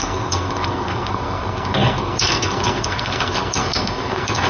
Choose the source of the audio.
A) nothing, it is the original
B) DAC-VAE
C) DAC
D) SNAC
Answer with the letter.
D